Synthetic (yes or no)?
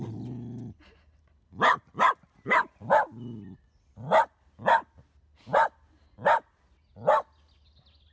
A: no